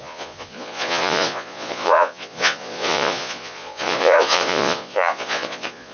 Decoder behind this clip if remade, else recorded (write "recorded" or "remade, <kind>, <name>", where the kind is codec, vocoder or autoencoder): remade, vocoder, Vocos